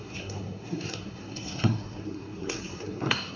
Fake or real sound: fake